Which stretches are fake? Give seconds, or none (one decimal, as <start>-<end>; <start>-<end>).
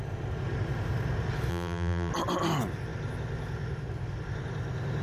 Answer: 1.5-2.1